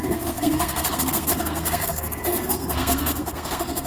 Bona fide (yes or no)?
no